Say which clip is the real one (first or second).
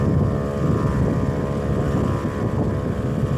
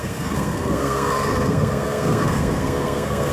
first